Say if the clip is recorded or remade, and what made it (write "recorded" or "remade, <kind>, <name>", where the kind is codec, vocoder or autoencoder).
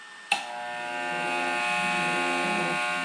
recorded